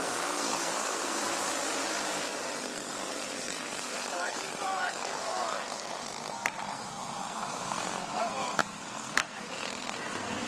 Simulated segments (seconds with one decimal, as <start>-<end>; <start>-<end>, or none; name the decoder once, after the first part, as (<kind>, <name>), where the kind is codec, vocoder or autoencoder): 0.0-1.2 (codec, SNAC); 2.6-10.5